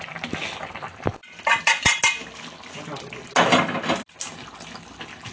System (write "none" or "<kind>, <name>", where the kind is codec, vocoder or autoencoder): none